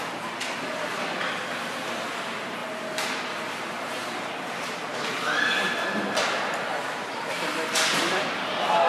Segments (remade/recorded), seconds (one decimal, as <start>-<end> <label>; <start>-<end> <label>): 0.0-2.6 recorded; 2.6-4.3 remade; 4.3-8.9 recorded

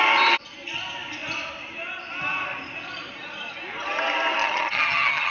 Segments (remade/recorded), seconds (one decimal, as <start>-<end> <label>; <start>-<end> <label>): 0.0-4.4 recorded; 4.4-5.3 remade

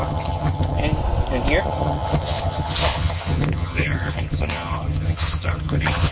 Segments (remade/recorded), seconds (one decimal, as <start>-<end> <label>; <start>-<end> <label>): 0.0-0.8 remade; 0.8-1.6 recorded; 1.6-6.1 remade

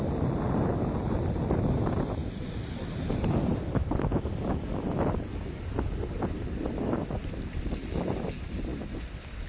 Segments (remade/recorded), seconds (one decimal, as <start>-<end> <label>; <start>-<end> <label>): 0.0-2.2 recorded; 2.2-2.7 remade; 2.7-7.0 recorded; 7.0-7.6 remade; 7.6-9.5 recorded

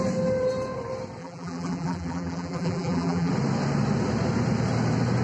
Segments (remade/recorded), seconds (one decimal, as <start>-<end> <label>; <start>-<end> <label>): 0.0-1.2 recorded; 1.2-3.3 remade; 3.3-5.2 recorded

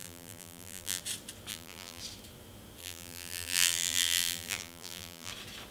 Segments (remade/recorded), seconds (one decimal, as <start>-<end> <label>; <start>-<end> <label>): 0.0-1.0 remade; 1.0-1.5 recorded; 1.5-2.0 remade; 2.0-2.8 recorded; 2.8-5.3 remade; 5.3-5.7 recorded